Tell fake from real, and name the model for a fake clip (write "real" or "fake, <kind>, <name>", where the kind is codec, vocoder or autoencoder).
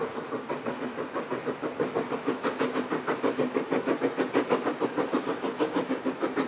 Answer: real